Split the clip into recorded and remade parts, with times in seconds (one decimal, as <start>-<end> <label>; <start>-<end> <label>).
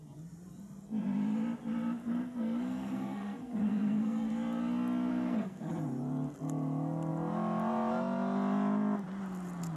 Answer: 0.0-2.0 recorded; 2.0-4.3 remade; 4.3-5.1 recorded; 5.1-5.7 remade; 5.7-9.8 recorded